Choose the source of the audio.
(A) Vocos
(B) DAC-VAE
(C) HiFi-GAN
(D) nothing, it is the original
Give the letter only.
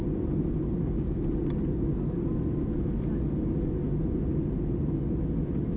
D